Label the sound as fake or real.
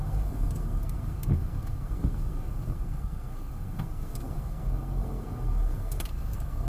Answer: fake